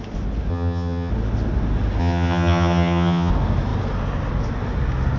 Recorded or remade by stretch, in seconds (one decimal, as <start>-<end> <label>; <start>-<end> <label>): 0.0-0.5 recorded; 0.5-1.1 remade; 1.1-2.0 recorded; 2.0-3.3 remade; 3.3-5.2 recorded